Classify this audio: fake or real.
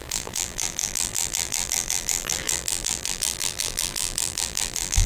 fake